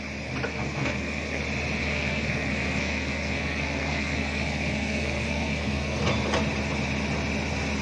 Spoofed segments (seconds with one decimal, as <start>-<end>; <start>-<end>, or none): 0.5-1.4; 1.8-6.0